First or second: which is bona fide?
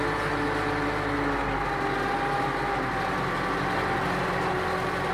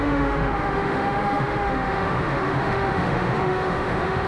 first